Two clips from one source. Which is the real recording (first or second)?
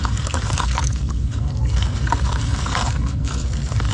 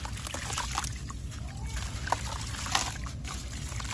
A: second